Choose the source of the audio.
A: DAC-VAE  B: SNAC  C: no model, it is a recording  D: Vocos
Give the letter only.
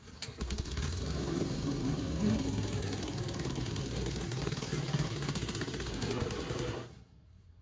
B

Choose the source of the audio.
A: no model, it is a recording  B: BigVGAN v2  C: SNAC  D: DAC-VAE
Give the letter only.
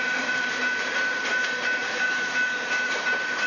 B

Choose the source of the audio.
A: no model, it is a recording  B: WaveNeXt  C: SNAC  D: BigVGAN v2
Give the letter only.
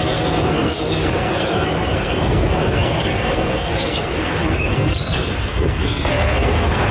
C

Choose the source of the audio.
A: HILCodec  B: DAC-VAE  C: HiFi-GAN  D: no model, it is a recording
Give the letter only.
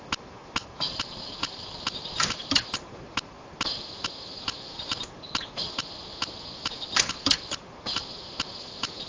D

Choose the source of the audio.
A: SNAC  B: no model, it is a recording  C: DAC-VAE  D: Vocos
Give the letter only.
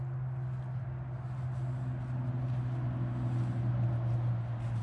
B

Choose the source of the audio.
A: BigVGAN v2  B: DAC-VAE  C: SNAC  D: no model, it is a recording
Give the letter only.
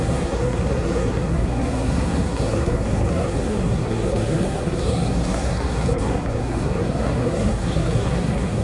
C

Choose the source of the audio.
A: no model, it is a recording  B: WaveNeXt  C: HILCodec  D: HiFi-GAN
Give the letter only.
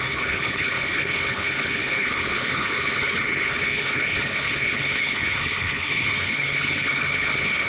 C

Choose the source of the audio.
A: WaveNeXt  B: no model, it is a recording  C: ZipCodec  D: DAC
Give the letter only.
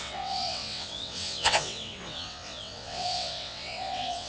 A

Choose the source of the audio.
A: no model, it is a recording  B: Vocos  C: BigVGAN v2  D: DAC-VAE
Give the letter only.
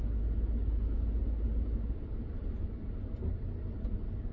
A